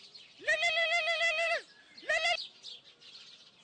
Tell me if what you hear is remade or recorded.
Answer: recorded